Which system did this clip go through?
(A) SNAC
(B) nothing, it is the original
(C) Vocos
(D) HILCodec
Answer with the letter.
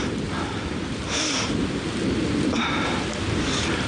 B